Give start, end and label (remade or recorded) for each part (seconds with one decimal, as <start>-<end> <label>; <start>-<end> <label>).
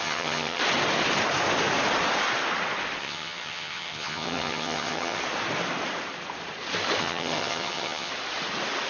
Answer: 0.0-0.6 remade; 0.6-3.0 recorded; 3.0-5.2 remade; 5.2-7.0 recorded; 7.0-8.1 remade; 8.1-8.9 recorded